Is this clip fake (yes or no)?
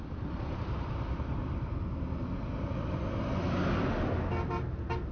no